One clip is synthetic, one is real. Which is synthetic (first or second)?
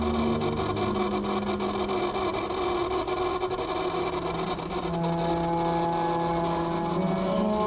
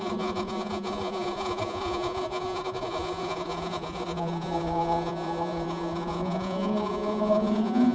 second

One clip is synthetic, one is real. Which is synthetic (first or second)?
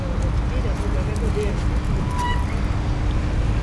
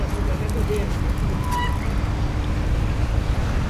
second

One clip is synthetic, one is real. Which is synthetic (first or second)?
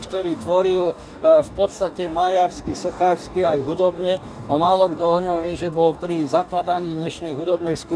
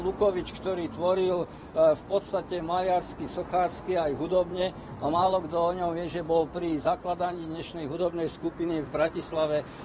first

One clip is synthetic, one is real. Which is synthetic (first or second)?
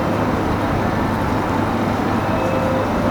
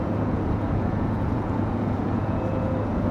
second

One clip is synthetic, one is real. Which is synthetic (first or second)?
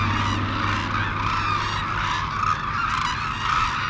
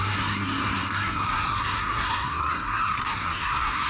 second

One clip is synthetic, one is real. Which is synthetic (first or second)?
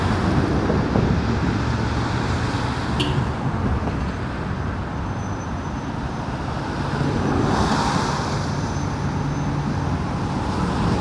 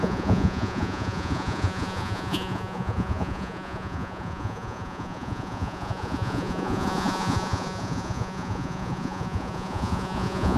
second